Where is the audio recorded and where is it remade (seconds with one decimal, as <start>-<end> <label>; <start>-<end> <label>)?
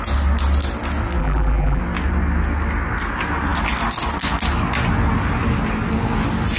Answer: 0.0-1.2 recorded; 1.2-1.8 remade; 1.8-6.6 recorded